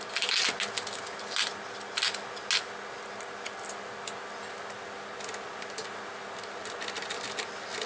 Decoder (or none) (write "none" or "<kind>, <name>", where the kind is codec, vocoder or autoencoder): none